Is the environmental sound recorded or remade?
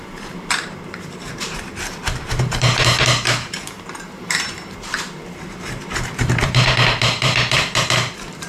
remade